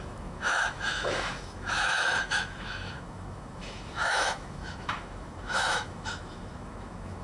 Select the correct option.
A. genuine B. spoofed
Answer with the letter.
B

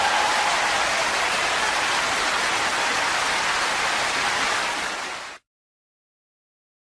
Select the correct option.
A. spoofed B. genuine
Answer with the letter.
B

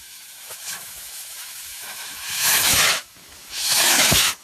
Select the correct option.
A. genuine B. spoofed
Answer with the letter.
B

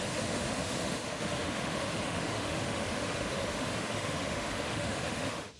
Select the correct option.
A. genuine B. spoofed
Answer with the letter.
B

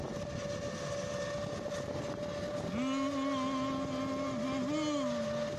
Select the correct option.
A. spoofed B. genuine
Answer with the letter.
B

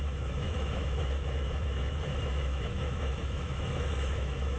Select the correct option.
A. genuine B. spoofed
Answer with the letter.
B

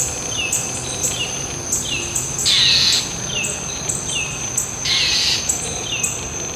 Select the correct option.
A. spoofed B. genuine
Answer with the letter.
B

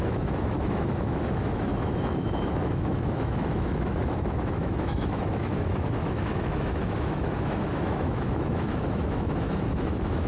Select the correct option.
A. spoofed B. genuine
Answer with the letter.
A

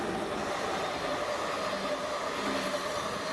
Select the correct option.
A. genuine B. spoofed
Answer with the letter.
A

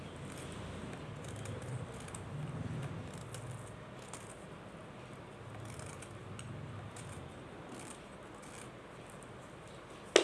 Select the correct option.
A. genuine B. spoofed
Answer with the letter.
A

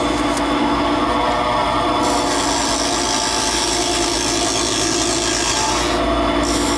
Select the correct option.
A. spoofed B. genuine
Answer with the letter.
B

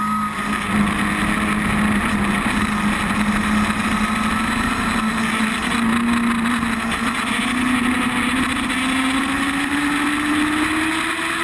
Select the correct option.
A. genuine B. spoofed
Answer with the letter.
A